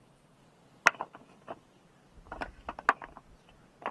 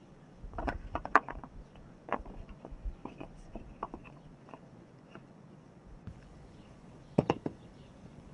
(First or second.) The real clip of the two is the first